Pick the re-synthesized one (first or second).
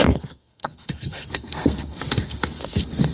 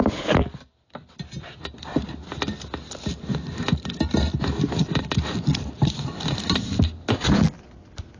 first